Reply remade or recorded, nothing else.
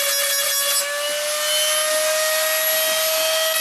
recorded